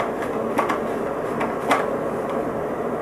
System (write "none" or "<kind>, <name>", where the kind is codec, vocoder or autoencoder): none